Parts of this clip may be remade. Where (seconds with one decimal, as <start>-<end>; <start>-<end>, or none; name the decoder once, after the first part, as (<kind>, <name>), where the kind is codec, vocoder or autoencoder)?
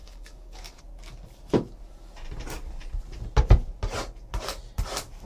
0.0-0.8 (codec, DAC)